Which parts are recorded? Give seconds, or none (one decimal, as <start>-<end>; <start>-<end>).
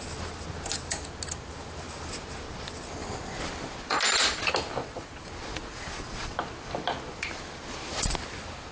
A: 0.0-4.8; 6.3-8.7